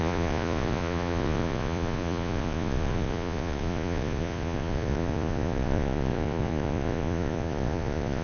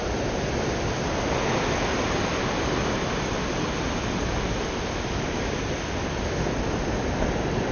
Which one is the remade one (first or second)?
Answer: first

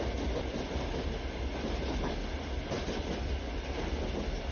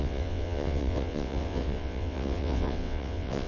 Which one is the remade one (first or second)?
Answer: second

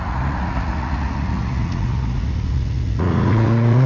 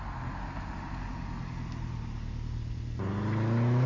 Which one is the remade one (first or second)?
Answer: first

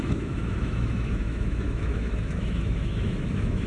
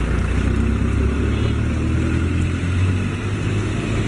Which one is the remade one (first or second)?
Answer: first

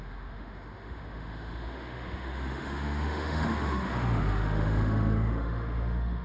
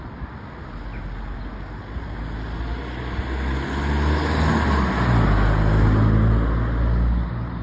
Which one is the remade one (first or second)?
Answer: first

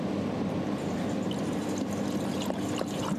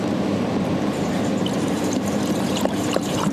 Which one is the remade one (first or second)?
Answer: second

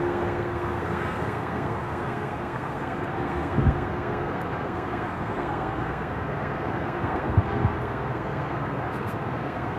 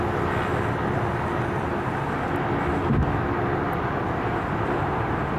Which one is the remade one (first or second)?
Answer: first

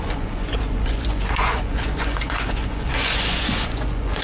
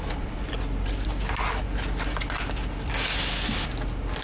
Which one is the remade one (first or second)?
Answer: first